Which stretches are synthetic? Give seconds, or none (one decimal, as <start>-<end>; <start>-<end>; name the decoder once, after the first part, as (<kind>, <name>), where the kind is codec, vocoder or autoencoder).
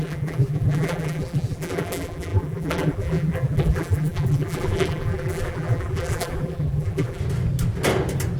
0.0-7.2 (vocoder, BigVGAN v2)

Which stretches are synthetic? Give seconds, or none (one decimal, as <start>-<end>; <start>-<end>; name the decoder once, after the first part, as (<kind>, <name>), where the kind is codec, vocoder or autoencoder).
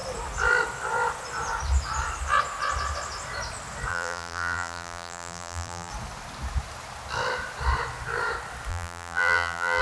3.9-5.9 (vocoder, BigVGAN v2); 8.7-9.8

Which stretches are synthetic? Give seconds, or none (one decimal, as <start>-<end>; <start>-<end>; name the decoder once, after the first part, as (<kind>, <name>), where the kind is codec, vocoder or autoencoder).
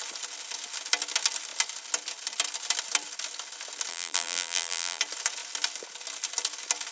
3.9-5.0 (vocoder, BigVGAN v2)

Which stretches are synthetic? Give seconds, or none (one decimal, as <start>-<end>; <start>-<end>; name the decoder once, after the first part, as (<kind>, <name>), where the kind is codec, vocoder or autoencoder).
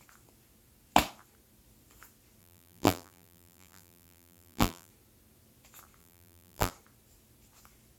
2.4-4.9 (vocoder, BigVGAN v2); 6.0-6.7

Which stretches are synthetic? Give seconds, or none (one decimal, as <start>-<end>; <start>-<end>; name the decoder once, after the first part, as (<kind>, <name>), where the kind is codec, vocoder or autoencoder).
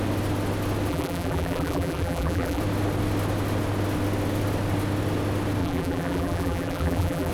0.9-2.6 (vocoder, BigVGAN v2); 5.6-7.3